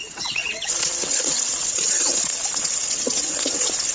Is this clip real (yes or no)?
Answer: no